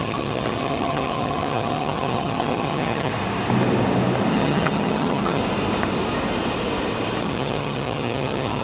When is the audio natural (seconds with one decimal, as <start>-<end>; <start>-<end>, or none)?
3.1-4.3; 5.4-7.2